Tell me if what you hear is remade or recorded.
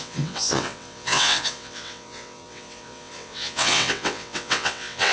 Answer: remade